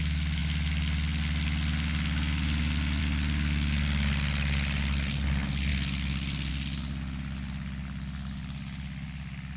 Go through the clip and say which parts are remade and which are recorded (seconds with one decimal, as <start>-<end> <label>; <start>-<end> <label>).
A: 0.0-9.6 recorded